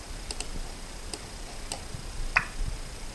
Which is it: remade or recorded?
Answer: recorded